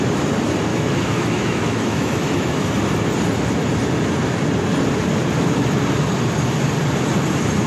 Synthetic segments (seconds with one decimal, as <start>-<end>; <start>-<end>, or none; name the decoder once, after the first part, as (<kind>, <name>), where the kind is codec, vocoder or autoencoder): 0.7-2.7 (autoencoder, DAC-VAE)